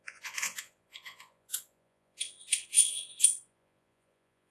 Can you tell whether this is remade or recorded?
remade